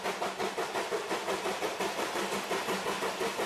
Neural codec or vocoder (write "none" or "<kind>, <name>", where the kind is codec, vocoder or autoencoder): none